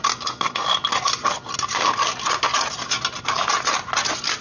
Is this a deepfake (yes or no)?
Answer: no